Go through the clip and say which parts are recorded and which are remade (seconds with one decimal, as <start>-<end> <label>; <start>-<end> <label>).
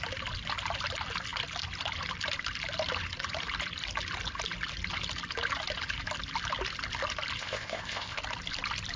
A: 0.0-7.4 recorded; 7.4-8.2 remade; 8.2-9.0 recorded